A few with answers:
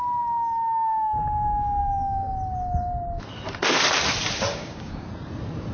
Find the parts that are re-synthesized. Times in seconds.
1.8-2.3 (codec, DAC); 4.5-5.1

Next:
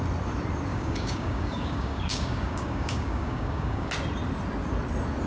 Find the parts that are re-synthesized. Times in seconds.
0.7-3.9 (codec, DAC)

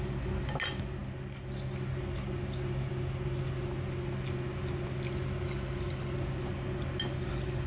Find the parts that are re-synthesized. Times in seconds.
none

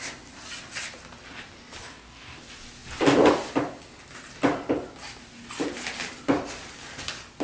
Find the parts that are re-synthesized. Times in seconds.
1.8-2.4 (codec, DAC)

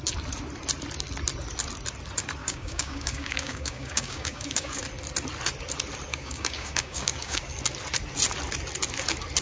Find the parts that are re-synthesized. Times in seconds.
2.4-4.8 (codec, DAC); 6.1-7.5

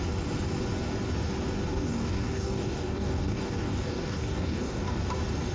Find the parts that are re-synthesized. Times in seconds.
1.7-5.0 (codec, DAC)

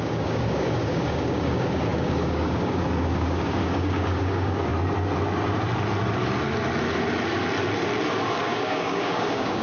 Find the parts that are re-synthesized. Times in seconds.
0.0-4.7 (codec, DAC); 8.4-9.6